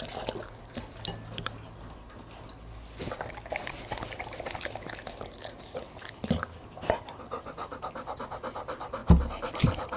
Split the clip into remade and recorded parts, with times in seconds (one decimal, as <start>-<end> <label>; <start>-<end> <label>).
0.0-10.0 recorded